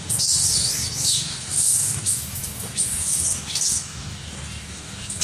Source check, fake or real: fake